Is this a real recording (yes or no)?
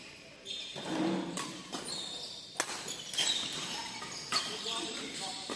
yes